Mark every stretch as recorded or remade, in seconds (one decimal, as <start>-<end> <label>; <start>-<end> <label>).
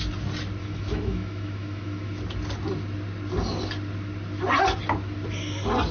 0.0-0.6 recorded; 0.6-2.2 remade; 2.2-5.9 recorded